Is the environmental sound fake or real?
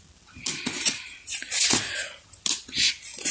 real